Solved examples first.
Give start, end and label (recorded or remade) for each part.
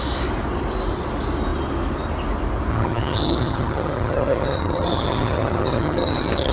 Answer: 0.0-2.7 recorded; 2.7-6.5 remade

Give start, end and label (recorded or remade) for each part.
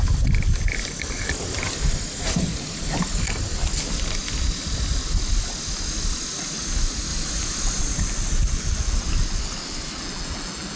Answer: 0.0-9.4 recorded; 9.4-10.0 remade; 10.0-10.8 recorded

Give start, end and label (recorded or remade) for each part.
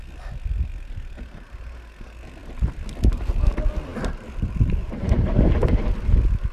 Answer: 0.0-3.9 recorded; 3.9-5.8 remade; 5.8-6.5 recorded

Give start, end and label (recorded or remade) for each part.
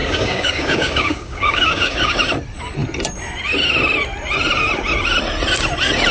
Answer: 0.0-2.2 remade; 2.2-6.1 recorded